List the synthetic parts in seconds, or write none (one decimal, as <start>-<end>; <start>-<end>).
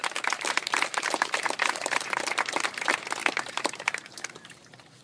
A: 0.0-2.2; 3.2-4.3